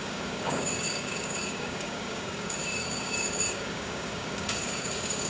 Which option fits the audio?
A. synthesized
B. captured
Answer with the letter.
A